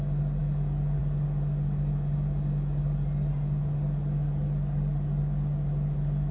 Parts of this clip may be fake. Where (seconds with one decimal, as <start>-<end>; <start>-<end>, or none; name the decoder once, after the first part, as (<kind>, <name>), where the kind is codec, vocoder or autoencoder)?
none